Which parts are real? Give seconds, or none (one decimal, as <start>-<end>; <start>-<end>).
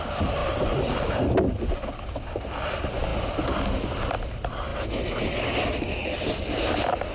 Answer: 0.0-7.1